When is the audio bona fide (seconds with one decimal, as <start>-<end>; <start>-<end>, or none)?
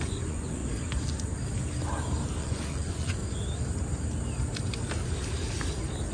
0.6-2.4; 3.2-6.1